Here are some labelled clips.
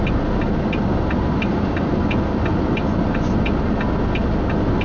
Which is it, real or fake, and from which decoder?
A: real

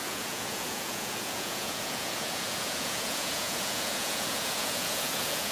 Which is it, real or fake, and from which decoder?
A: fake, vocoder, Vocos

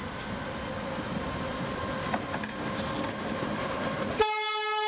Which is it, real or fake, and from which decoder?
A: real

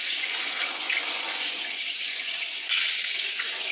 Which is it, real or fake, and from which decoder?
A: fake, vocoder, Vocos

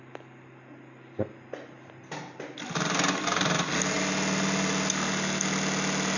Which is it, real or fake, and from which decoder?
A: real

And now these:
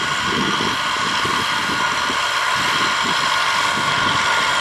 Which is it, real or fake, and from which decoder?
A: real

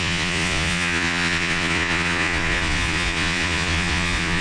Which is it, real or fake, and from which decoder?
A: fake, vocoder, Vocos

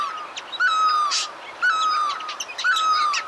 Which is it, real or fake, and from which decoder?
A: real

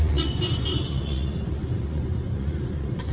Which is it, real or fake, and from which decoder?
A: fake, vocoder, Vocos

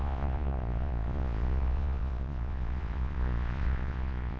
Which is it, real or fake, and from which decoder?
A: fake, vocoder, Vocos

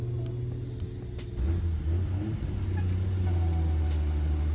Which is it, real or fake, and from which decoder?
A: real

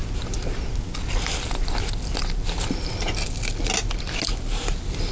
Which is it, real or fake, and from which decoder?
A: real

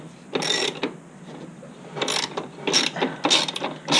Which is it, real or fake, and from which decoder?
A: real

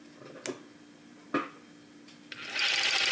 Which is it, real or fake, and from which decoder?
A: real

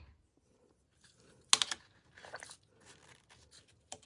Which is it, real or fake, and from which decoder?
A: real